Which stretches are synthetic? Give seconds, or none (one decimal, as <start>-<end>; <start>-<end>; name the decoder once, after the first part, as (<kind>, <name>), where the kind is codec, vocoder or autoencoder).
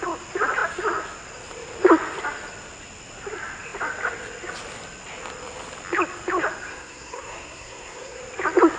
6.7-8.2 (codec, SNAC)